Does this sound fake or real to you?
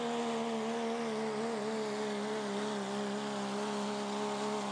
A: real